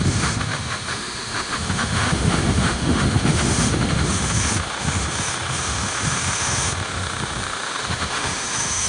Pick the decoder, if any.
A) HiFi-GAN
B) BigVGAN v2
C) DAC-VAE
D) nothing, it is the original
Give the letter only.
C